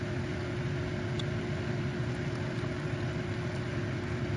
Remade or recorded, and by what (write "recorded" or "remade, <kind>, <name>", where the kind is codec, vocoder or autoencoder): recorded